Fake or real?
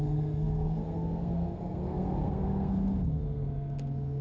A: fake